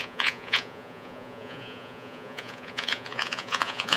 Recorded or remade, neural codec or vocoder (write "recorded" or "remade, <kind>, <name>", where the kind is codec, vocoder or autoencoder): remade, vocoder, Vocos